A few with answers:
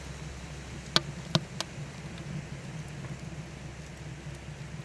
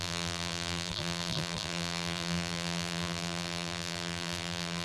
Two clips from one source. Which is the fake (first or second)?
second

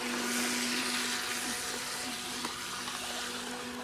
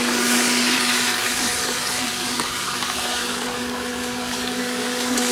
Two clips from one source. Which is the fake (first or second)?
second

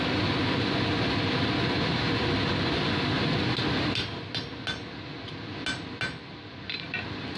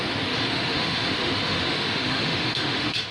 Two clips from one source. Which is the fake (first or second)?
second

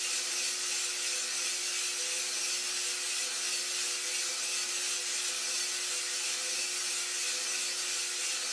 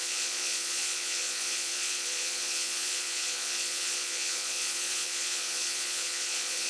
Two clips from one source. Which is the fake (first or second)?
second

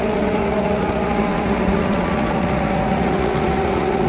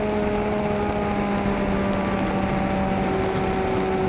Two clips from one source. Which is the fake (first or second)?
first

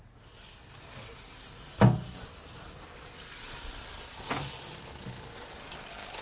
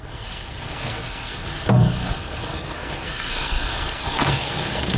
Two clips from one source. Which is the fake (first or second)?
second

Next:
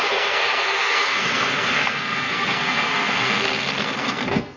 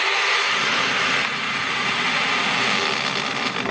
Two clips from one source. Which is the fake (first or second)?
first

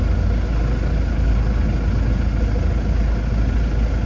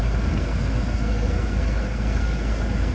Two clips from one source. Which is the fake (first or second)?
second